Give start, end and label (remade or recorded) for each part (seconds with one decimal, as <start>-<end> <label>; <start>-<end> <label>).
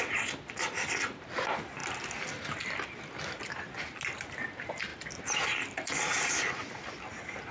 0.0-7.5 recorded